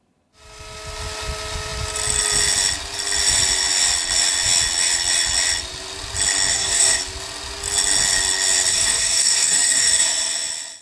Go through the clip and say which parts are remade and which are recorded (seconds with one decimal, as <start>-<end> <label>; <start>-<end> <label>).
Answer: 0.0-6.5 recorded; 6.5-7.0 remade; 7.0-8.7 recorded; 8.7-10.0 remade; 10.0-10.8 recorded